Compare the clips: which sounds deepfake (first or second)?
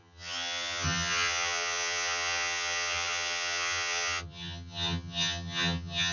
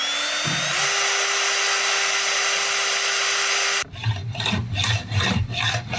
first